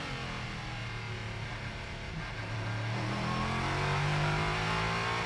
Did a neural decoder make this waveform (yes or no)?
no